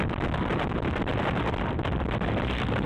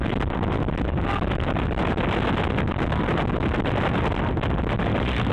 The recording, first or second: second